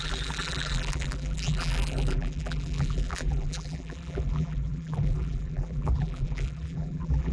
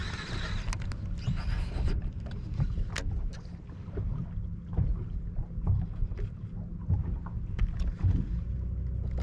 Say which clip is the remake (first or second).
first